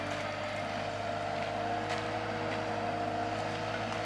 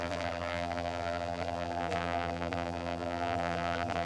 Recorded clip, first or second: first